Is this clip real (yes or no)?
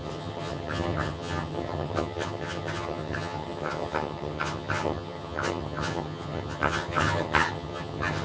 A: no